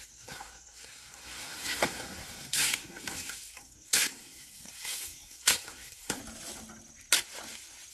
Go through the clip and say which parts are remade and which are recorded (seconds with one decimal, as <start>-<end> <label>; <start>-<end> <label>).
0.0-6.2 remade; 6.2-7.9 recorded